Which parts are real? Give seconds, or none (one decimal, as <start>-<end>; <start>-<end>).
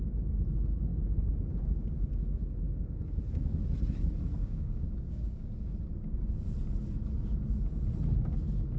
0.0-4.4; 5.7-8.8